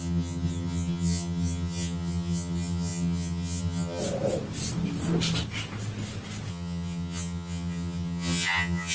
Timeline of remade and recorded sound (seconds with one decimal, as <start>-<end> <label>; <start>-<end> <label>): 0.0-4.0 remade; 4.0-6.5 recorded; 6.5-8.9 remade